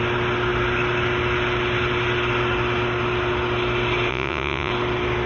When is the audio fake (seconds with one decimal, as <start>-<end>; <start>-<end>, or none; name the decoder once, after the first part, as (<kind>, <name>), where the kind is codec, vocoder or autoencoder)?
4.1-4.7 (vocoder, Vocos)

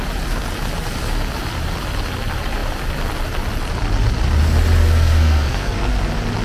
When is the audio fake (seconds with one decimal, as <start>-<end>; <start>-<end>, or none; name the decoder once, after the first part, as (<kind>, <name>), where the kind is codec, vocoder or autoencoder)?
4.8-5.9 (codec, SNAC)

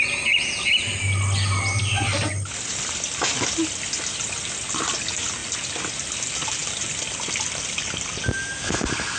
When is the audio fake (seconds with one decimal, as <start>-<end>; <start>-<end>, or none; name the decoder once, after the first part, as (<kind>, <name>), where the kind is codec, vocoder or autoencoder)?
none